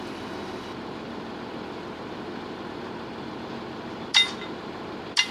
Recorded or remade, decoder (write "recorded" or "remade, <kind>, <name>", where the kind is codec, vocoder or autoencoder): remade, vocoder, BigVGAN v2